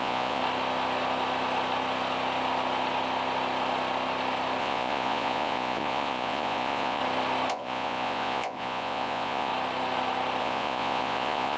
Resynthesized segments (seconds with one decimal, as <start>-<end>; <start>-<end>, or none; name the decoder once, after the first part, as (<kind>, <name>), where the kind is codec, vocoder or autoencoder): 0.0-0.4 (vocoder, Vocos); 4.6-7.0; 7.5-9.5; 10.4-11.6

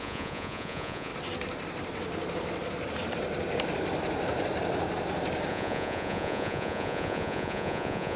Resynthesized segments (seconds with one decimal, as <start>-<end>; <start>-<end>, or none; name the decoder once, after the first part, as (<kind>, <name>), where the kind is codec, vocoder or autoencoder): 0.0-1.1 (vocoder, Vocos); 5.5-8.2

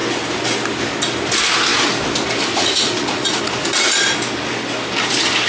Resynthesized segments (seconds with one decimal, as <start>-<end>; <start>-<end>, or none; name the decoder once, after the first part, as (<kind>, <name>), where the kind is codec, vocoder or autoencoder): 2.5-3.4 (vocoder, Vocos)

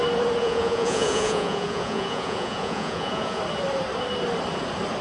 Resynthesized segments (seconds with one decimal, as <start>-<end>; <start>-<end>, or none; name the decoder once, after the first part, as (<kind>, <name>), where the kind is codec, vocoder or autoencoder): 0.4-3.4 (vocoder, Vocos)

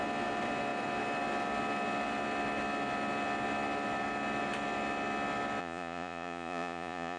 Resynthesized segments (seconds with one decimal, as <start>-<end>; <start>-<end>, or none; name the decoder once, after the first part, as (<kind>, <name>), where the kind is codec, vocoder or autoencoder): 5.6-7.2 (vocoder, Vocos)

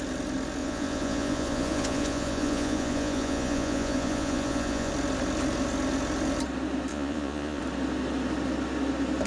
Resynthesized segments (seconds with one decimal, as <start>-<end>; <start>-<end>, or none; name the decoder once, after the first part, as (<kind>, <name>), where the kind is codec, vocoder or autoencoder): 0.6-4.9 (vocoder, Vocos); 6.9-7.6

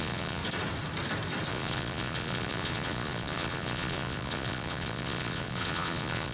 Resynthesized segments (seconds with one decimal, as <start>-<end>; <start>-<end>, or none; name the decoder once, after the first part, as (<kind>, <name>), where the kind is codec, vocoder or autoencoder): 0.0-0.4 (vocoder, Vocos); 1.5-6.3